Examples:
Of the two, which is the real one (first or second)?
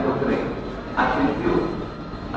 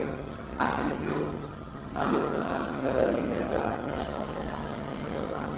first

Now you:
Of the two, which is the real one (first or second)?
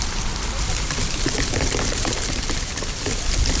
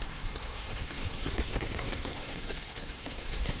first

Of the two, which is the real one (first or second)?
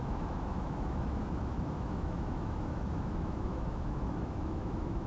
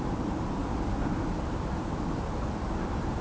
second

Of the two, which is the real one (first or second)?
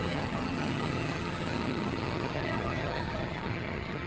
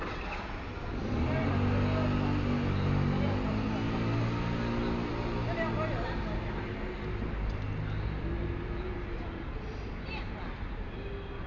second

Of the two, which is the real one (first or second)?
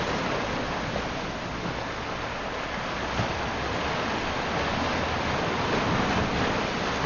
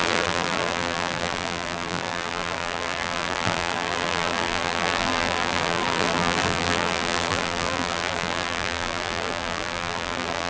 first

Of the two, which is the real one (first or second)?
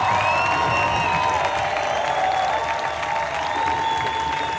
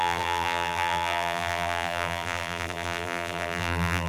first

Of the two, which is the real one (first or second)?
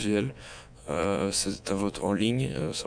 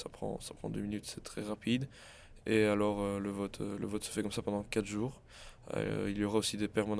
second